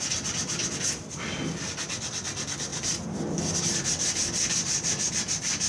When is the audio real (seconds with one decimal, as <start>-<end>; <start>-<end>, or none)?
0.0-5.7